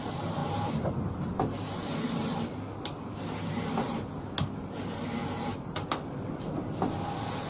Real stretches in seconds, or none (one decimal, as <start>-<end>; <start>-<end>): 0.0-7.5